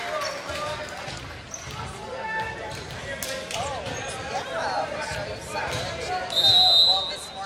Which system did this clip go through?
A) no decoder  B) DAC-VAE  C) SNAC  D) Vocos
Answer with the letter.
A